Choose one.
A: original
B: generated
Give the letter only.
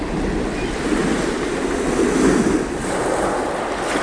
A